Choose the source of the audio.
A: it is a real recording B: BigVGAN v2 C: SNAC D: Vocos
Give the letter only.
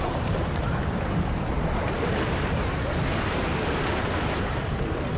B